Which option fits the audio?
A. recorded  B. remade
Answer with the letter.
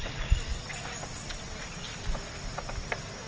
A